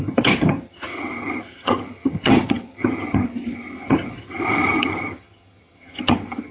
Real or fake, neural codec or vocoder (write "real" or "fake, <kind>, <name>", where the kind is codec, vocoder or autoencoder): fake, vocoder, HiFi-GAN